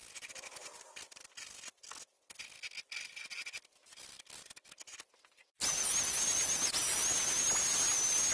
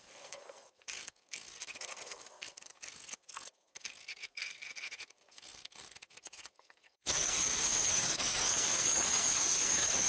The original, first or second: first